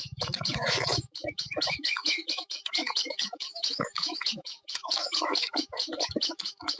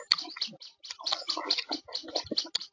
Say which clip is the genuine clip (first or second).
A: second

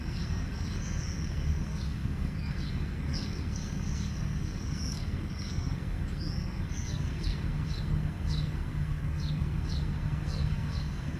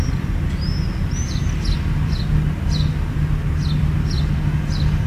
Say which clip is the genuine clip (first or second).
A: second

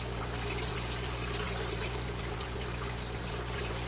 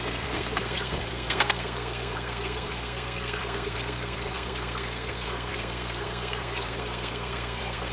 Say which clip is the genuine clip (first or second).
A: first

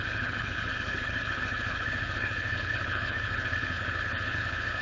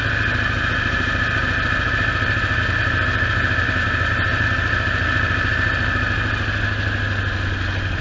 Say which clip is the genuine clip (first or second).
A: second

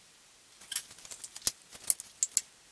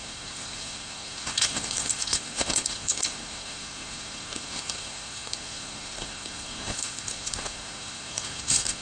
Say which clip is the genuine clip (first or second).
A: first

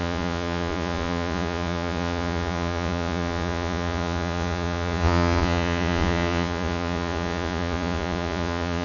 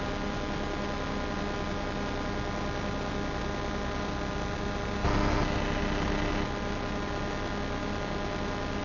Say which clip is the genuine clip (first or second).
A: second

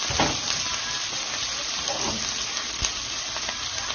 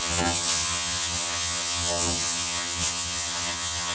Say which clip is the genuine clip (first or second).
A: first